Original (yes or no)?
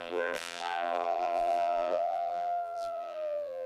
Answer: no